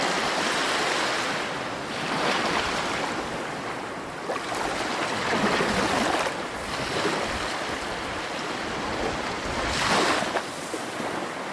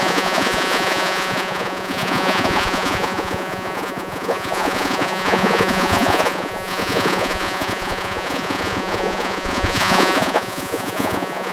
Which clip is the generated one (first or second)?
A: second